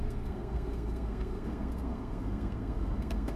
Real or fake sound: fake